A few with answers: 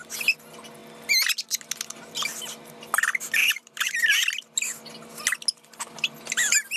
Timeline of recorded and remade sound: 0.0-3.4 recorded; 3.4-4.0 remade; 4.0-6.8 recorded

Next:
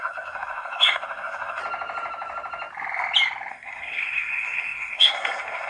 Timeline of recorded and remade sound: 0.0-1.6 remade; 1.6-3.5 recorded; 3.5-5.7 remade